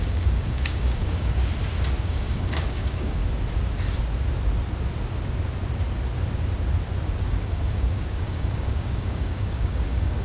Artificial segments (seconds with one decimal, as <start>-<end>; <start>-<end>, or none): 0.0-1.5; 2.0-3.2; 7.2-10.2